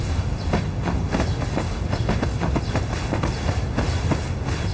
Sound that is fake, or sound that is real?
real